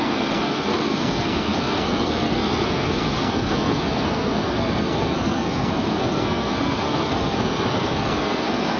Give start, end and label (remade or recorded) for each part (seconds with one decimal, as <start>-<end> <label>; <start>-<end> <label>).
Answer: 0.0-8.8 remade